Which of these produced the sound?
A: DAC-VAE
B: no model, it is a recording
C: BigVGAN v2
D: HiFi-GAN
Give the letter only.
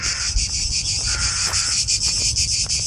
B